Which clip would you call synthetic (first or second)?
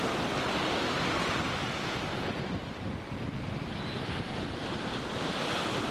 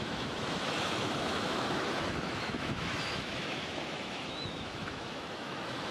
second